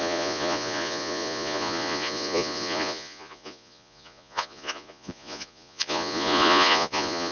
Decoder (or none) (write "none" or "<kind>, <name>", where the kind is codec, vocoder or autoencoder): vocoder, Vocos